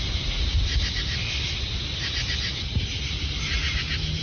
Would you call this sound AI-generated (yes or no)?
no